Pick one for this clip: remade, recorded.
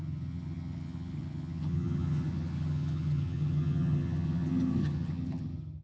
remade